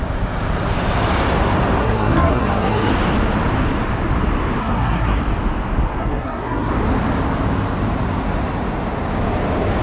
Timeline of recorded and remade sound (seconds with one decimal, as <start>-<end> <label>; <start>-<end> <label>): 0.0-1.8 recorded; 1.8-2.9 remade; 2.9-4.6 recorded; 4.6-5.2 remade; 5.2-6.0 recorded; 6.0-6.7 remade; 6.7-9.8 recorded